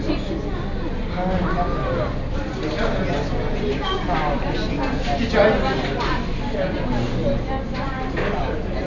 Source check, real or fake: real